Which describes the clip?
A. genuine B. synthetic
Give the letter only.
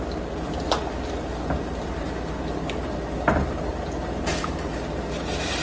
A